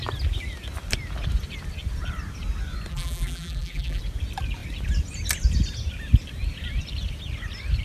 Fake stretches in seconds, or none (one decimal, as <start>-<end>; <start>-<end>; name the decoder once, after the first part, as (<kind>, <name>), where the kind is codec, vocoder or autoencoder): 2.9-4.0 (vocoder, BigVGAN v2)